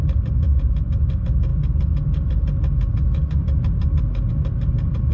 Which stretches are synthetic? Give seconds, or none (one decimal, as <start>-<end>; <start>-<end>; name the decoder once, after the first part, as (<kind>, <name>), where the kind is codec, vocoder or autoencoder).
none